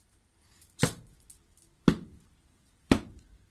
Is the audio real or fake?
real